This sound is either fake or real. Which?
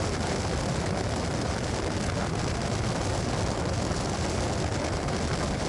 real